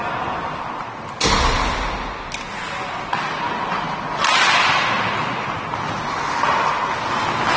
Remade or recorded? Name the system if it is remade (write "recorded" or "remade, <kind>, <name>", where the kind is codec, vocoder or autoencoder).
recorded